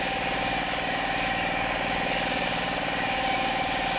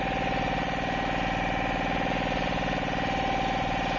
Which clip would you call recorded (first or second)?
second